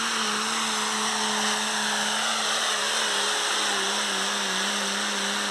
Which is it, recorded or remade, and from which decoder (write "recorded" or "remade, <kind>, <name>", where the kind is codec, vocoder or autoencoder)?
recorded